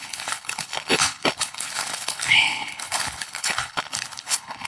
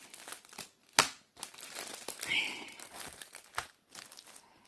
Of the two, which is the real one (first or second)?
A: second